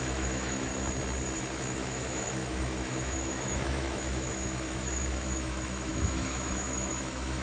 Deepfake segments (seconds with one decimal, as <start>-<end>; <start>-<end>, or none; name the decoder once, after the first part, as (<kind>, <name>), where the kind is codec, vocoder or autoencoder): 0.0-0.7 (autoencoder, DAC-VAE); 1.6-7.4